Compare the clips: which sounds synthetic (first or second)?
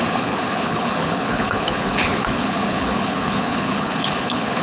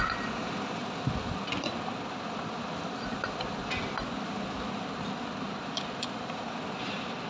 first